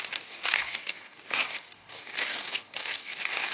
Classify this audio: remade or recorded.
remade